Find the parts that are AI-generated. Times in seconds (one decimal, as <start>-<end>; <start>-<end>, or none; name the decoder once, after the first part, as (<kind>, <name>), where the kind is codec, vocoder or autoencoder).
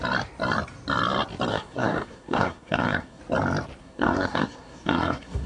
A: 1.5-3.2 (codec, SNAC); 3.8-5.5